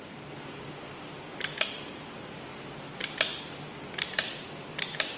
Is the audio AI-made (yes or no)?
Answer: no